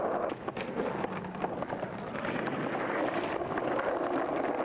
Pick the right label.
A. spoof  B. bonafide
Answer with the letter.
B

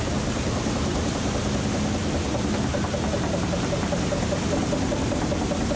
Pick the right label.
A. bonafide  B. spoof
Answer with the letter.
A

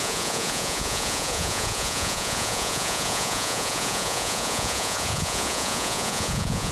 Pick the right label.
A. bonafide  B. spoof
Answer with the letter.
B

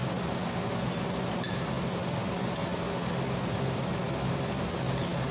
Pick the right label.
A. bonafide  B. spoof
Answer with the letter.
A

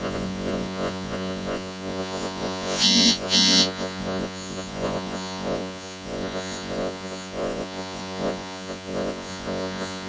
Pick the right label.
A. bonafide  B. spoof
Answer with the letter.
B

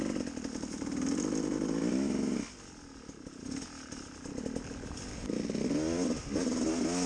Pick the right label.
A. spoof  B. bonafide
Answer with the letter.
B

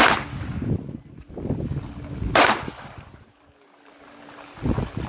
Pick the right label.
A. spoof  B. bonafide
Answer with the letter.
B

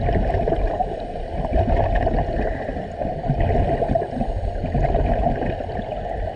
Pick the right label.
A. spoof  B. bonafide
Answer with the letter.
B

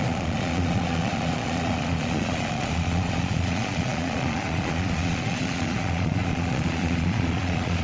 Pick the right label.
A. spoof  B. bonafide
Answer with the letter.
A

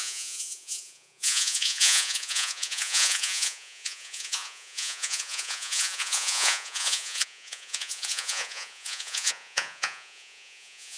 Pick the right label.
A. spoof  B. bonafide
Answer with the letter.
A